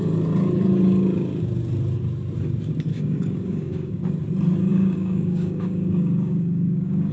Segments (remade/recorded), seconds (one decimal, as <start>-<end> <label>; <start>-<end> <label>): 0.0-2.9 recorded; 2.9-4.0 remade; 4.0-4.7 recorded; 4.7-7.1 remade